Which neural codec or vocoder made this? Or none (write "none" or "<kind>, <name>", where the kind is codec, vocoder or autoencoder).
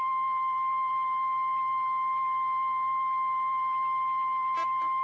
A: vocoder, BigVGAN v2